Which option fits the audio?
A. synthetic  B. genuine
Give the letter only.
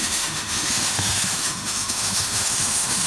A